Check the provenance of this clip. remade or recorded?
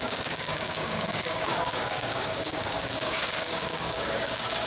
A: remade